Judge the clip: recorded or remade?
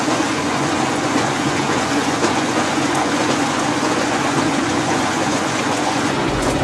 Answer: remade